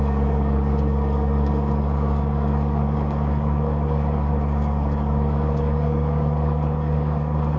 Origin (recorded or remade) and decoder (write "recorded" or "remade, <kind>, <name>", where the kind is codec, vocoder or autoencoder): remade, codec, DAC